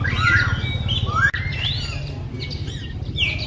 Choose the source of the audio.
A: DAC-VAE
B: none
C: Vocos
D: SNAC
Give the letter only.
B